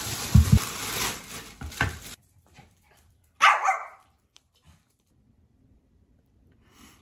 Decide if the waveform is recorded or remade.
remade